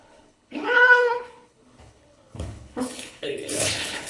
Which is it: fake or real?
fake